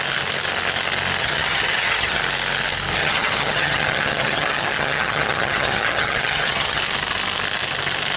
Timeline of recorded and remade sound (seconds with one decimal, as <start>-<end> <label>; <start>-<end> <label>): 0.0-1.2 recorded; 1.2-2.2 remade; 2.2-3.0 recorded; 3.0-6.8 remade; 6.8-8.2 recorded